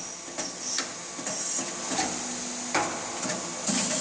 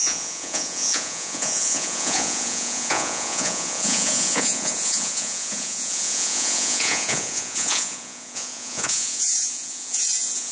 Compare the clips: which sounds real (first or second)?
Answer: first